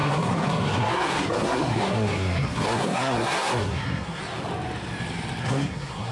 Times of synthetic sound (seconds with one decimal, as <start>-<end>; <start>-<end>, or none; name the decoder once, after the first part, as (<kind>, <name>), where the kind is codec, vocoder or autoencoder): 0.0-4.2 (codec, SNAC); 5.4-6.1